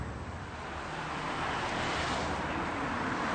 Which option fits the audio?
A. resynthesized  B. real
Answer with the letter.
B